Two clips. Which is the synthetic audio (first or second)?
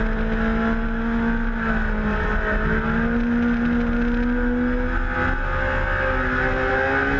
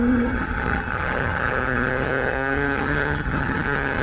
second